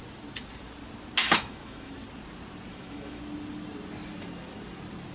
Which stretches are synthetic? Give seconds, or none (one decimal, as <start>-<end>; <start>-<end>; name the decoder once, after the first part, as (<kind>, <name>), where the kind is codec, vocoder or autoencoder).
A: 1.2-1.9 (autoencoder, DAC-VAE); 2.7-3.2